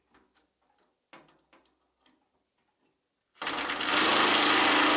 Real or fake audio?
real